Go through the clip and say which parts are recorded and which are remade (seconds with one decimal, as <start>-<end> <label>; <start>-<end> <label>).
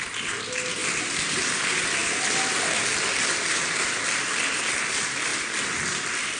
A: 0.0-0.8 recorded; 0.8-1.4 remade; 1.4-5.3 recorded; 5.3-6.4 remade